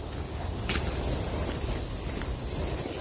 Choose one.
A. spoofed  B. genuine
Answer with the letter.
B